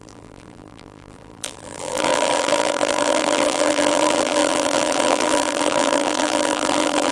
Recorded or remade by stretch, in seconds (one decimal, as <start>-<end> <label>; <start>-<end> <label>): 0.0-7.1 remade

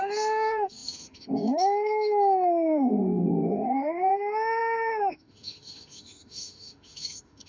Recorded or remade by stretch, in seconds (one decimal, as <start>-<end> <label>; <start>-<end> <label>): 0.0-7.5 remade

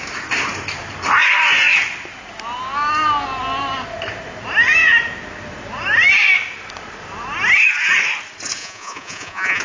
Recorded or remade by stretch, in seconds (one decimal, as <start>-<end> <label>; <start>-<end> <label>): 0.0-8.6 recorded; 8.6-9.6 remade